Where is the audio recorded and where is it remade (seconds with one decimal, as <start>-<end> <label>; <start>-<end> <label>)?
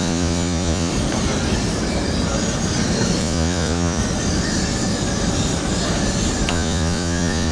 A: 0.0-0.9 remade; 0.9-3.2 recorded; 3.2-4.0 remade; 4.0-6.5 recorded; 6.5-7.5 remade